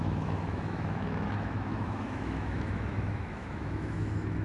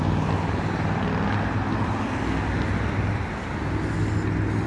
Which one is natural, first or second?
second